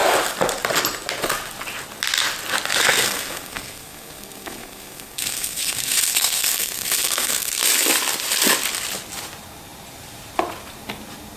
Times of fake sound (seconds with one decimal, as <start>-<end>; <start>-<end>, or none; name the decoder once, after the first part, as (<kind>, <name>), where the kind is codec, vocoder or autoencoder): 2.8-7.6 (codec, SNAC)